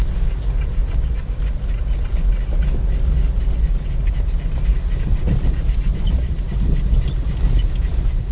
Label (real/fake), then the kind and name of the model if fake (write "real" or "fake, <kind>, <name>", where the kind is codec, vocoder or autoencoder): real